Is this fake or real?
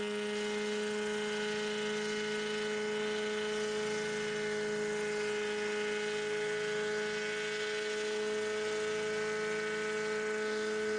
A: real